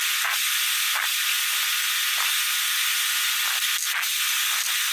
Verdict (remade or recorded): recorded